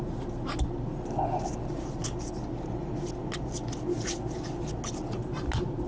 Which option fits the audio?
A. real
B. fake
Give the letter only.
A